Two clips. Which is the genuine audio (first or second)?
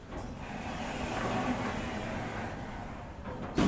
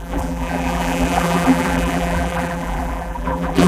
first